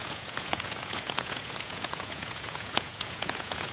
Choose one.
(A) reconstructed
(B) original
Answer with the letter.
A